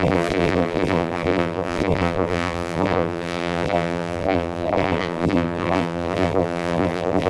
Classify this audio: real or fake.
fake